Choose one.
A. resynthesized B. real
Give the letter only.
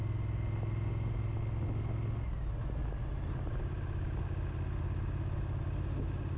B